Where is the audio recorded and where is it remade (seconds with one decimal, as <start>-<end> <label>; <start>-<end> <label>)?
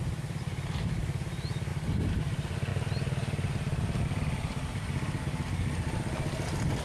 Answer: 0.0-6.8 recorded